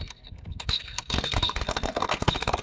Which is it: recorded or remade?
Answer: remade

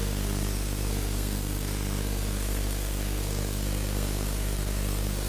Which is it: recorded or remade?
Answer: remade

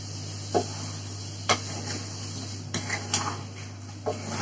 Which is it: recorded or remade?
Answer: recorded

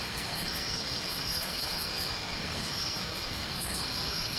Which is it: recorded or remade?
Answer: remade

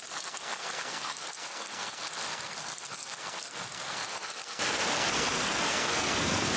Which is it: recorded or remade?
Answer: remade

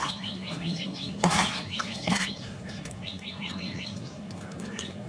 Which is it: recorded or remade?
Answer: remade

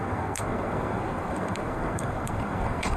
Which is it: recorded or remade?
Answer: remade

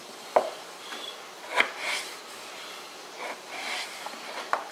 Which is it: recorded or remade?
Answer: recorded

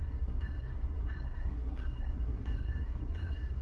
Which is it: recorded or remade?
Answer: remade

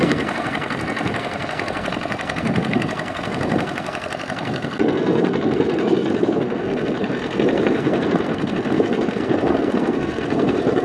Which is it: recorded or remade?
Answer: remade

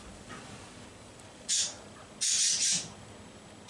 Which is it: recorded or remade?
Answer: recorded